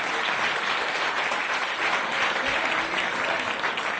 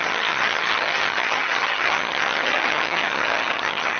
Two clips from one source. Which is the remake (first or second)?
second